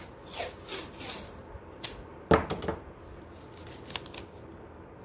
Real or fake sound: real